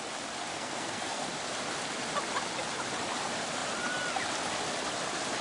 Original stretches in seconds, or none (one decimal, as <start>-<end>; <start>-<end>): 0.0-0.5; 1.3-5.4